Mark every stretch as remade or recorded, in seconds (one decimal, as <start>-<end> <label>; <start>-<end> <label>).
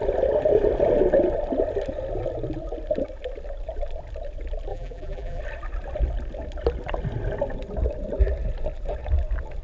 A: 0.0-4.7 recorded; 4.7-5.4 remade; 5.4-9.6 recorded